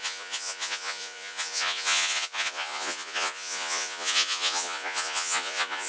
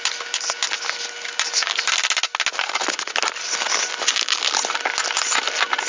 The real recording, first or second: second